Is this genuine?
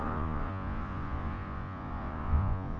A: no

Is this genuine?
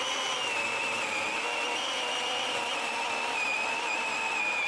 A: yes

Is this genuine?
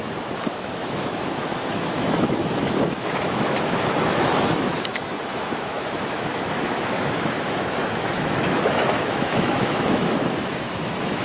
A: no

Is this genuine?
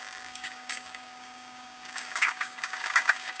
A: no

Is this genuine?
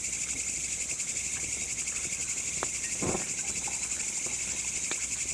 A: yes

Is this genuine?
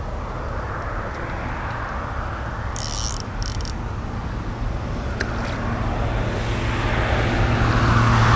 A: yes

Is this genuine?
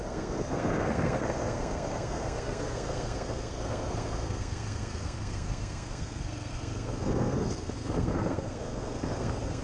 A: no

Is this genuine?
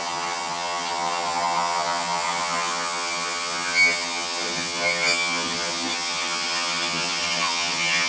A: no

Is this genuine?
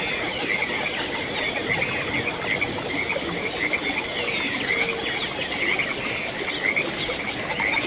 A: yes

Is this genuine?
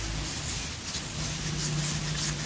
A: yes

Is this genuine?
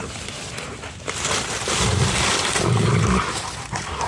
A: no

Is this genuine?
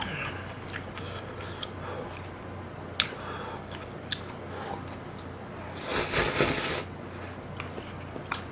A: yes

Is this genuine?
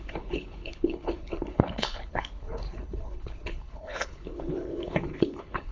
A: no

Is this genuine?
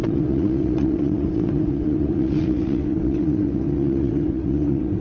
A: no